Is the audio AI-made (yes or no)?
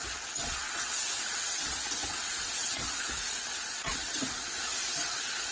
yes